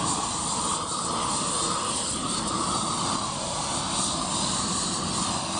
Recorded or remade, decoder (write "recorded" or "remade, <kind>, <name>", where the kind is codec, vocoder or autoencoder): recorded